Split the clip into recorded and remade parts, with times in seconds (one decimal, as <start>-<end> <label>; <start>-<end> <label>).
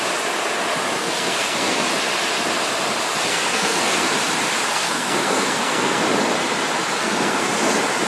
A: 0.0-1.0 recorded; 1.0-1.9 remade; 1.9-3.3 recorded; 3.3-4.1 remade; 4.1-4.7 recorded; 4.7-6.0 remade; 6.0-7.0 recorded; 7.0-7.5 remade; 7.5-8.1 recorded